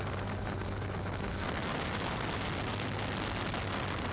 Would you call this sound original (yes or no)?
yes